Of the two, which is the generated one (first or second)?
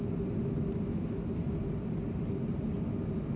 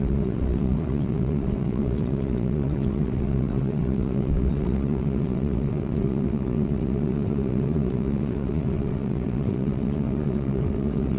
second